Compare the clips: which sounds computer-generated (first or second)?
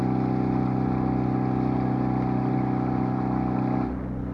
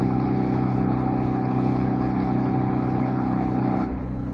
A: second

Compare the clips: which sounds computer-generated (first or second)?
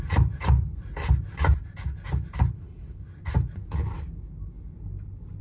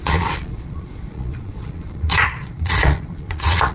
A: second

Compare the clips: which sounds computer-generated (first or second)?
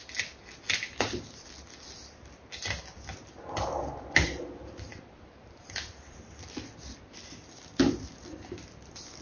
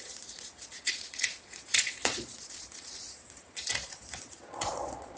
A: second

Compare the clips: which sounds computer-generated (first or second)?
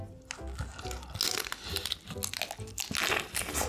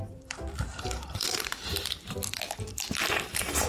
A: second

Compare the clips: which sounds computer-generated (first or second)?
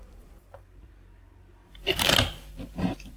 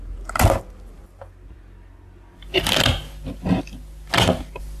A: first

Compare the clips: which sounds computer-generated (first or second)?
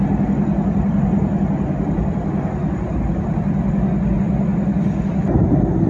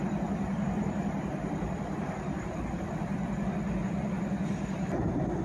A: second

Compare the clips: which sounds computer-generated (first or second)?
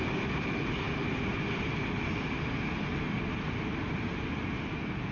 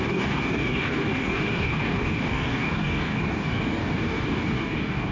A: second